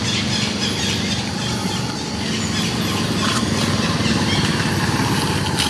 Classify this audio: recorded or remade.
recorded